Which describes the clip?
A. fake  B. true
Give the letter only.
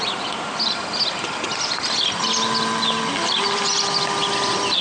B